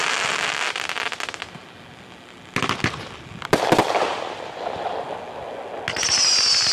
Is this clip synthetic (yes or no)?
no